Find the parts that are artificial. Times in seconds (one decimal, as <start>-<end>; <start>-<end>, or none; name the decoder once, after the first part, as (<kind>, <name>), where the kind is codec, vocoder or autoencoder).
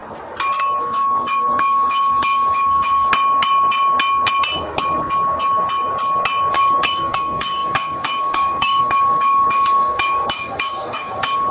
0.8-3.1 (codec, DAC); 6.5-11.5